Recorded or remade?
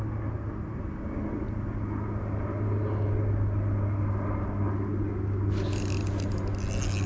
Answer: recorded